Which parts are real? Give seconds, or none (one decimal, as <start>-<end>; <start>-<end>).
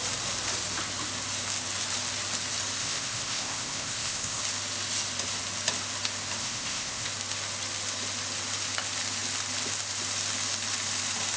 0.0-2.8; 4.4-6.4; 7.1-11.4